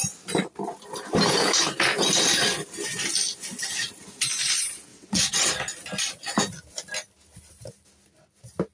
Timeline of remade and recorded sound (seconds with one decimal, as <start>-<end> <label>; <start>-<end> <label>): 0.0-4.9 recorded; 4.9-5.5 remade; 5.5-8.7 recorded